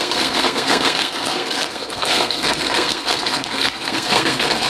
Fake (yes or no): yes